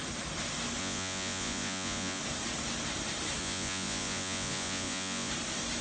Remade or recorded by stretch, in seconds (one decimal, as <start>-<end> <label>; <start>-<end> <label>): 0.0-0.8 recorded; 0.8-2.2 remade; 2.2-3.4 recorded; 3.4-5.3 remade; 5.3-5.8 recorded